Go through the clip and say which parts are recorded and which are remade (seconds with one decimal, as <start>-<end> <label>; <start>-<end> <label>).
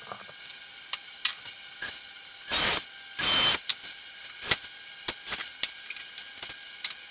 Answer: 0.0-7.1 recorded